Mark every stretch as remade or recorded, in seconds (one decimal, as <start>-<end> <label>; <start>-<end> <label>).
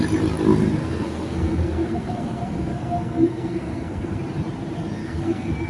0.0-0.8 recorded; 0.8-4.2 remade; 4.2-5.0 recorded; 5.0-5.7 remade